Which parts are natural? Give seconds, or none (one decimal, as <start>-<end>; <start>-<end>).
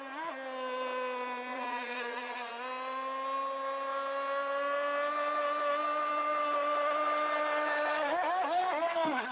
0.0-1.5; 2.5-9.3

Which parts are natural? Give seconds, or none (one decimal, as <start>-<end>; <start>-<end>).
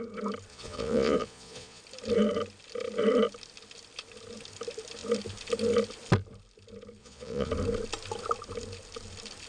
0.0-0.5; 1.8-7.0; 7.5-9.5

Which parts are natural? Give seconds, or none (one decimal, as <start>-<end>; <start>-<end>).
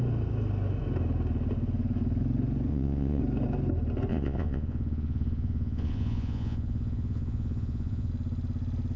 0.0-2.7; 3.2-4.1; 8.1-9.0